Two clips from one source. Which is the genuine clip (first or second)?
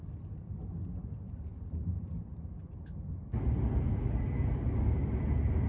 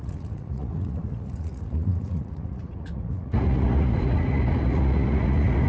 first